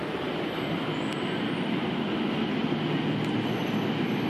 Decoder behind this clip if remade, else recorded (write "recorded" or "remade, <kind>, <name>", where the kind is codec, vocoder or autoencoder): recorded